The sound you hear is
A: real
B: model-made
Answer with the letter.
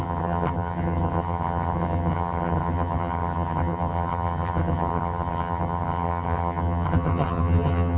B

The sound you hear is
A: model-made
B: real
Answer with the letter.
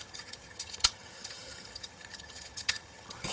A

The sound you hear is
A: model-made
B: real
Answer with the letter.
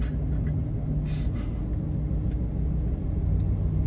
B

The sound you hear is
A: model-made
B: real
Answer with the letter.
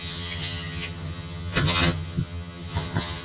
A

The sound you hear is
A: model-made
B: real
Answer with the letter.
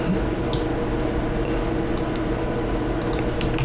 B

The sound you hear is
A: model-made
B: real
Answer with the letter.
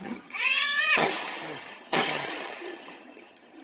A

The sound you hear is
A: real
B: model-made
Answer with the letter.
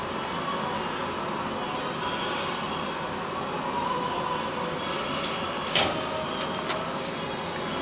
A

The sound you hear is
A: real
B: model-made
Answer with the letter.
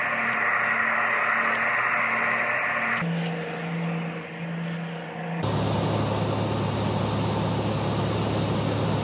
A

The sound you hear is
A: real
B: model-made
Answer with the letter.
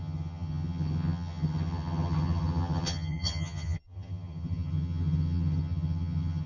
B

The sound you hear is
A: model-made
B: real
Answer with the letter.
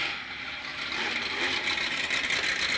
B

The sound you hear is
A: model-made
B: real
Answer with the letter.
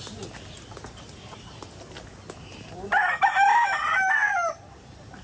B